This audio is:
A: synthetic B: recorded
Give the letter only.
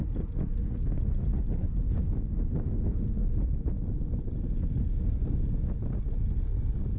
B